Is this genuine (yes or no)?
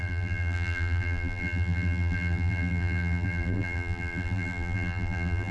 no